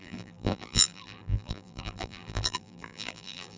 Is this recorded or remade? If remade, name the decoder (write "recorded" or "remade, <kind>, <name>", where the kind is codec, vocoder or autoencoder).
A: remade, vocoder, BigVGAN v2